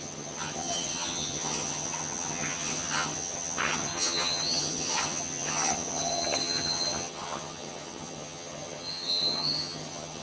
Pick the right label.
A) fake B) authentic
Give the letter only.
A